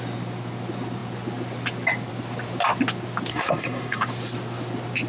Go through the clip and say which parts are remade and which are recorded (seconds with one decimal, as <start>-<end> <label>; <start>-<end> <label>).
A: 0.0-3.3 recorded; 3.3-4.1 remade; 4.1-5.1 recorded